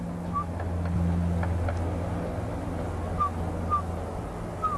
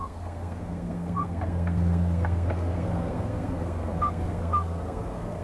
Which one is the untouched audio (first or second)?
first